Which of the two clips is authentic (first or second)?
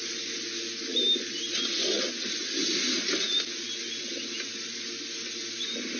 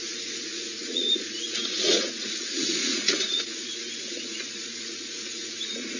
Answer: first